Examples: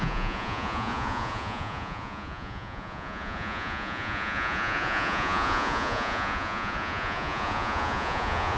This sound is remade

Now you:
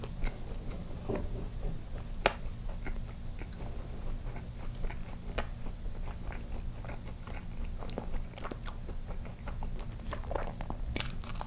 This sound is recorded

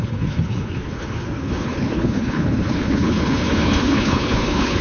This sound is remade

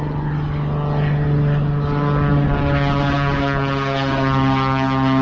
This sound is recorded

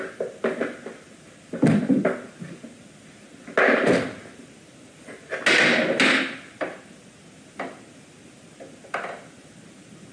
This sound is recorded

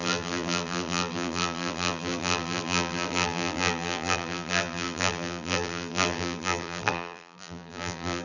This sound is remade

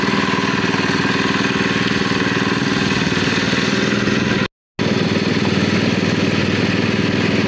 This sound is recorded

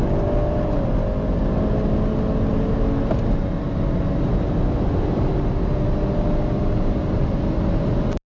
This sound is recorded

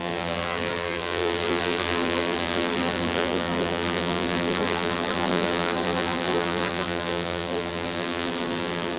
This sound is remade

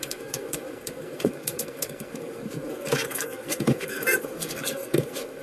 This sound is remade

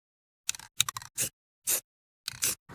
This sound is recorded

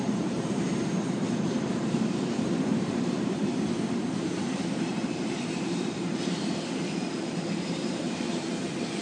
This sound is remade